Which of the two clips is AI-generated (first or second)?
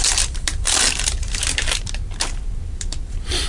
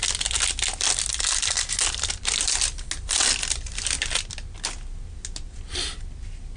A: first